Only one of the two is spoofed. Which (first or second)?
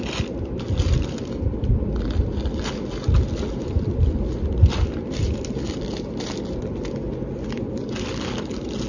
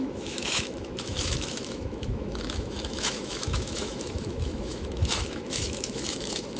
second